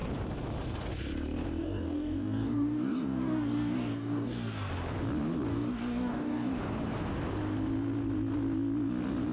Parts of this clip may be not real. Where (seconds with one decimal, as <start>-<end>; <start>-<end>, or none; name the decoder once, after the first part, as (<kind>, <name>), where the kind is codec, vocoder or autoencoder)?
1.6-4.7 (codec, DAC); 5.5-6.5